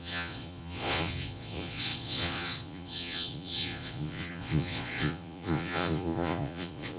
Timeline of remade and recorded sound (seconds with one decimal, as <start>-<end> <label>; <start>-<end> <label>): 0.0-7.0 remade